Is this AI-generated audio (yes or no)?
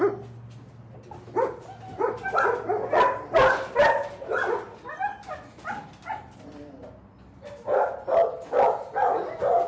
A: no